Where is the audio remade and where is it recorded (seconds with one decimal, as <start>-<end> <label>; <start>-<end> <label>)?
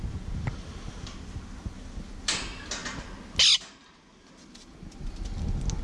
0.0-5.8 recorded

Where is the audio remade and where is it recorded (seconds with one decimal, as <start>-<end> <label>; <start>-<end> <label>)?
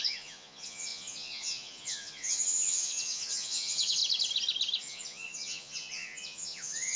0.0-4.0 remade; 4.0-4.8 recorded; 4.8-7.0 remade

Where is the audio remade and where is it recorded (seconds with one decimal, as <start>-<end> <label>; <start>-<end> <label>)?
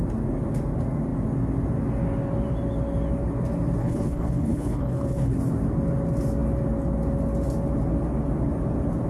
0.0-3.8 recorded; 3.8-5.4 remade; 5.4-9.1 recorded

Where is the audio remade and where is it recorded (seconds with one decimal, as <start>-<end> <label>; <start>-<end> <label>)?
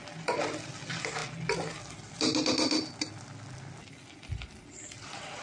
0.0-5.4 recorded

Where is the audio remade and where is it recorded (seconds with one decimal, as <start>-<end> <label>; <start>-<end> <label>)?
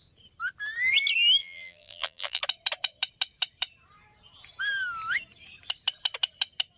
0.0-1.4 recorded; 1.4-2.4 remade; 2.4-6.8 recorded